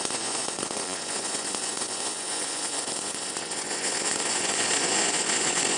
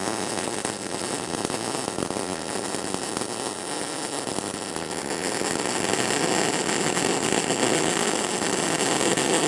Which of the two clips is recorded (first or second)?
second